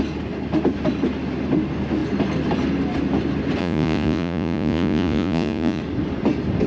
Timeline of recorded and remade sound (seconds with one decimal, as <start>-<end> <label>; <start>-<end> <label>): 0.0-3.6 recorded; 3.6-5.8 remade; 5.8-6.7 recorded